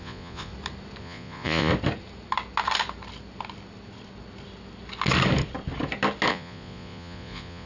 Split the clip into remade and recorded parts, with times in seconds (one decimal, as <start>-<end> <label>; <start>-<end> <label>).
0.0-0.5 remade; 0.5-1.0 recorded; 1.0-1.7 remade; 1.7-6.3 recorded; 6.3-7.7 remade